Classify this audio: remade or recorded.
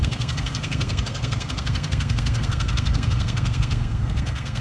remade